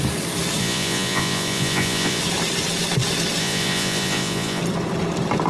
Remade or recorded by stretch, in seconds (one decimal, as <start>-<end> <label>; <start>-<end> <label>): 0.0-0.6 recorded; 0.6-2.2 remade; 2.2-3.4 recorded; 3.4-4.6 remade; 4.6-5.5 recorded